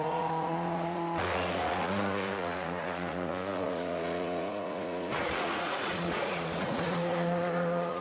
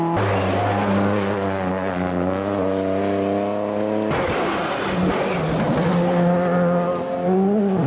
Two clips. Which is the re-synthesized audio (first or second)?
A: first